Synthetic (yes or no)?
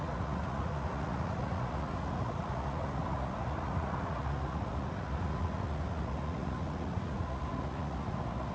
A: yes